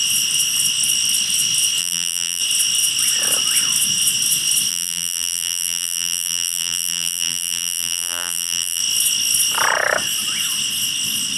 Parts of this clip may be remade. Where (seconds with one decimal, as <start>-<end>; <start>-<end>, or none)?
1.8-2.4; 4.7-8.8